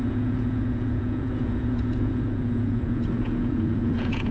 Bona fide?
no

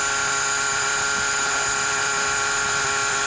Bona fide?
yes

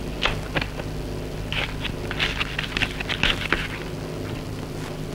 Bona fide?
yes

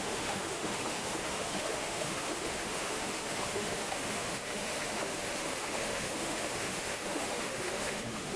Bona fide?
no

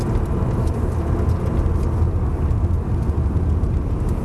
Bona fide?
yes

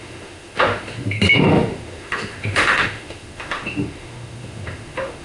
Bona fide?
no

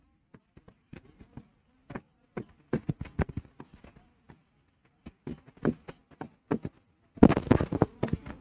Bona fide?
yes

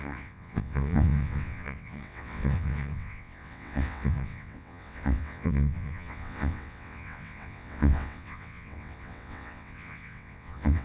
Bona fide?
no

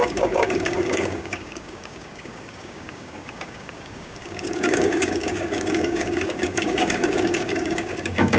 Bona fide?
no